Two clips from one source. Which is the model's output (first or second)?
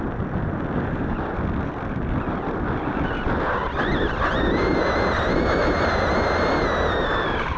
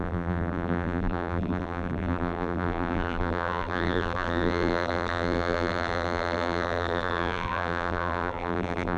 second